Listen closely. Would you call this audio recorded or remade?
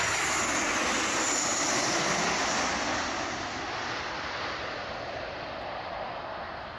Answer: recorded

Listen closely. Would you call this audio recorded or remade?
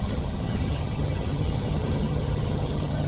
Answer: remade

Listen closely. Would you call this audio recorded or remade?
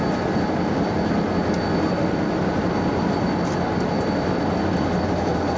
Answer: recorded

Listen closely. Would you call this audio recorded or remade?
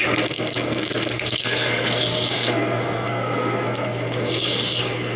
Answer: remade